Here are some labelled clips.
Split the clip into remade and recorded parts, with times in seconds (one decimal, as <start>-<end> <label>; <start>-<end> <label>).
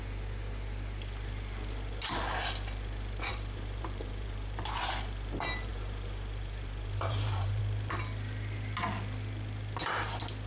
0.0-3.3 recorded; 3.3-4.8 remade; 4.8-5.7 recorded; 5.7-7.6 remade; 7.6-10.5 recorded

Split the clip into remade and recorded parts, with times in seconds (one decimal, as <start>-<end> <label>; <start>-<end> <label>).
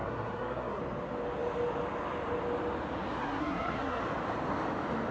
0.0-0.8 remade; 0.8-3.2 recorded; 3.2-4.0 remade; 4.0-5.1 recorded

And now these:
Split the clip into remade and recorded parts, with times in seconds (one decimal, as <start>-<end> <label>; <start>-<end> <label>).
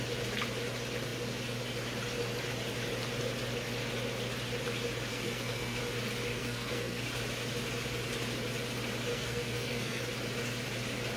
0.0-5.1 recorded; 5.1-5.8 remade; 5.8-6.3 recorded; 6.3-7.0 remade; 7.0-9.1 recorded; 9.1-10.0 remade; 10.0-11.2 recorded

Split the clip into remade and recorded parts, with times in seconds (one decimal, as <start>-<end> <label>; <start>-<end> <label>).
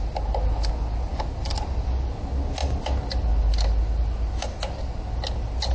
0.0-5.7 recorded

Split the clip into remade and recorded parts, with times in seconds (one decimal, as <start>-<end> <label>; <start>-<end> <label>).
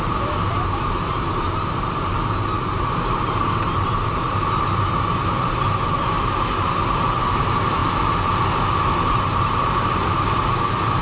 0.0-7.8 remade; 7.8-9.3 recorded; 9.3-11.0 remade